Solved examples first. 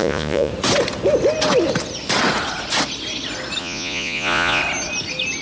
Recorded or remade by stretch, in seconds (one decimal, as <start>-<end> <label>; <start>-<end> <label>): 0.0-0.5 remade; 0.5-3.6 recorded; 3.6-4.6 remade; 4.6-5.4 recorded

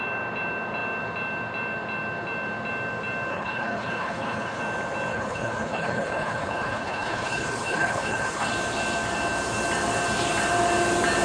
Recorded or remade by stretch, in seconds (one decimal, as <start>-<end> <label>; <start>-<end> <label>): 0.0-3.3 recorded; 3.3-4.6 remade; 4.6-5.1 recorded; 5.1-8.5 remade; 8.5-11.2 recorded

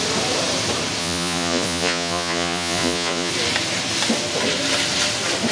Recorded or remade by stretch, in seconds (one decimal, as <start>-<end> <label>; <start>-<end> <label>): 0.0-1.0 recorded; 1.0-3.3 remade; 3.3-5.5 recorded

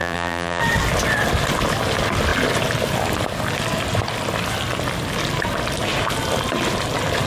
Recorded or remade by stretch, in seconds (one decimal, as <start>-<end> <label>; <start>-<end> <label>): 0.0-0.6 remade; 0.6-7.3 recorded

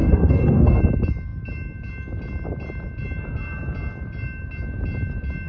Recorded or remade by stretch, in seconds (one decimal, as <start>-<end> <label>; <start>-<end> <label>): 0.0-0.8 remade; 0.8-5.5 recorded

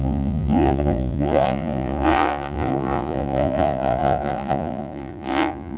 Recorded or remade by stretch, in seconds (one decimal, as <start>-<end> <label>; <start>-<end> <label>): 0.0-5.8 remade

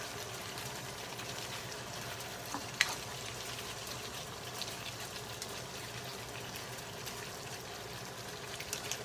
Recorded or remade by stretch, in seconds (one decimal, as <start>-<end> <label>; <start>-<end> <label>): 0.0-9.0 recorded

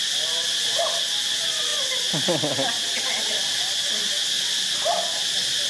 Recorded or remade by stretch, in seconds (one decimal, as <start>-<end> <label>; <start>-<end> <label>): 0.0-5.7 recorded